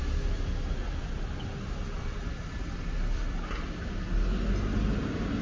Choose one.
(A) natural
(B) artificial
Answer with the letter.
A